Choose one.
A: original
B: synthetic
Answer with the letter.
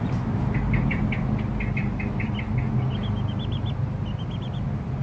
A